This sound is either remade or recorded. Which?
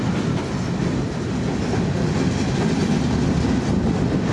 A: recorded